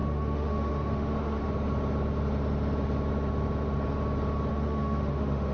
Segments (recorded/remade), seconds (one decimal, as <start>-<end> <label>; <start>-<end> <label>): 0.0-1.4 remade; 1.4-4.5 recorded; 4.5-5.5 remade